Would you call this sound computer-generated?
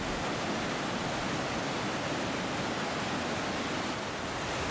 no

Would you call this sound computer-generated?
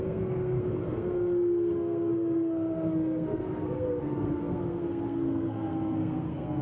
yes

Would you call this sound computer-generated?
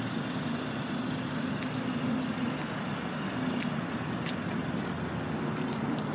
no